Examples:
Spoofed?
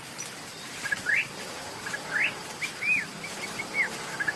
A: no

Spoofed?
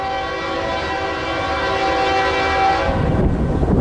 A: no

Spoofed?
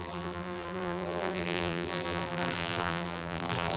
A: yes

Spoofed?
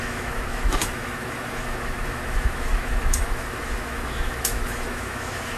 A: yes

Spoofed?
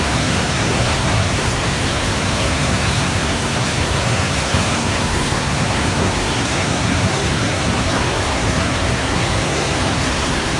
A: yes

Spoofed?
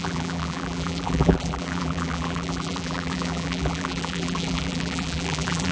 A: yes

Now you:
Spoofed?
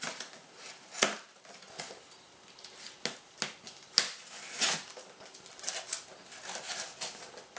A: no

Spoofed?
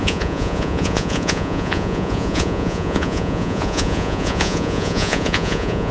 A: yes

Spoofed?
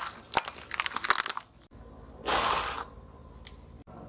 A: no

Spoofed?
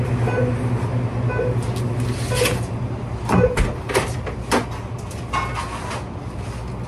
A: no